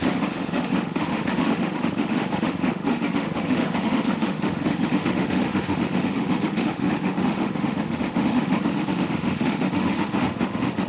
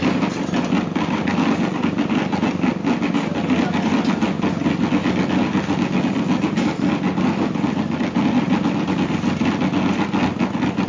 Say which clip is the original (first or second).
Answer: second